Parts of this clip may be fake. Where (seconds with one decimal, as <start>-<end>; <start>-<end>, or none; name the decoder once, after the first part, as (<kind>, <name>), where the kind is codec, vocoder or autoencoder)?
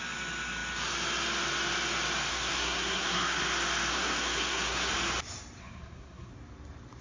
2.3-3.4 (codec, SNAC); 3.9-4.9; 5.6-6.3